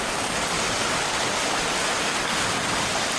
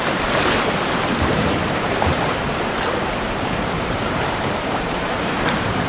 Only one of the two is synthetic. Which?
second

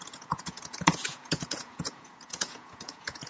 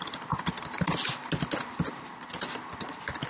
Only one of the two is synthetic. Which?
first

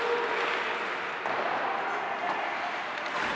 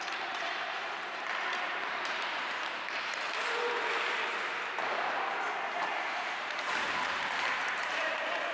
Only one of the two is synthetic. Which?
second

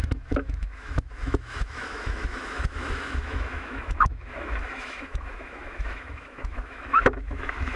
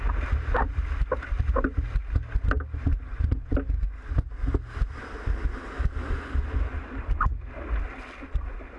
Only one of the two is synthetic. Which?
first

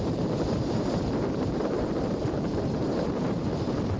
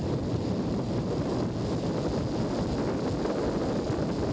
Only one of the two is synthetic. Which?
first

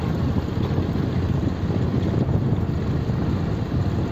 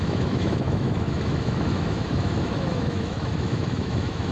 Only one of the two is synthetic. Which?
second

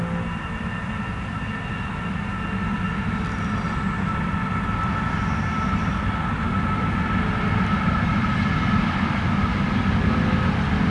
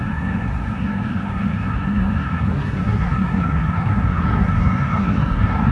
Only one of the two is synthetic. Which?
second